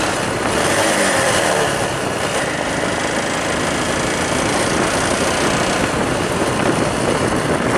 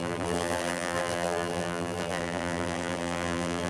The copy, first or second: second